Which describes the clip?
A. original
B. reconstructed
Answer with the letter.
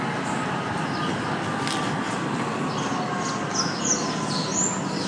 A